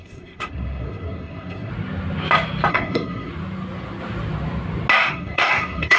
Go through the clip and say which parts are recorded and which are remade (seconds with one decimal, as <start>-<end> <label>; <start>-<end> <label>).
0.0-1.7 remade; 1.7-2.7 recorded; 2.7-3.3 remade; 3.3-5.1 recorded; 5.1-6.0 remade